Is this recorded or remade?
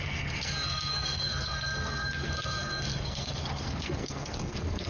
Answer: remade